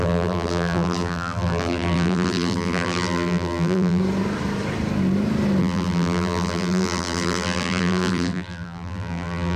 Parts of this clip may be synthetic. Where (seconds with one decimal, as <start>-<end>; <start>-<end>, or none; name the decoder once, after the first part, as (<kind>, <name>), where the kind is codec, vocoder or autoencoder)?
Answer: 0.0-4.0 (vocoder, BigVGAN v2); 5.6-9.6